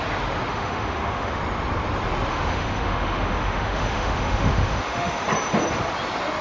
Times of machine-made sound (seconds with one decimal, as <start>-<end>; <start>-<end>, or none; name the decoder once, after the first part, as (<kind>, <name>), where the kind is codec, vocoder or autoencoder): 0.5-1.4 (autoencoder, DAC-VAE); 2.3-5.2